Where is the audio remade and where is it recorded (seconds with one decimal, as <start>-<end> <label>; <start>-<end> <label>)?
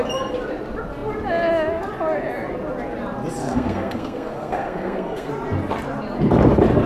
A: 0.0-3.4 recorded; 3.4-5.3 remade; 5.3-6.9 recorded